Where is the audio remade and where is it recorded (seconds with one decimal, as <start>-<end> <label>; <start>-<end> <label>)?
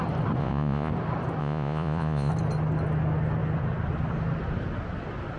0.0-0.4 recorded; 0.4-0.9 remade; 0.9-1.4 recorded; 1.4-2.3 remade; 2.3-5.4 recorded